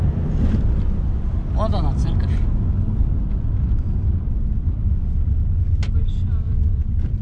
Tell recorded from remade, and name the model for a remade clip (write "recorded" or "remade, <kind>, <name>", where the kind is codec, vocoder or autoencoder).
recorded